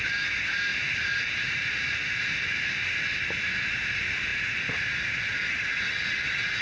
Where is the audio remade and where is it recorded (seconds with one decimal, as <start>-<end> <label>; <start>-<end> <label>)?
0.0-0.7 recorded; 0.7-2.1 remade; 2.1-6.6 recorded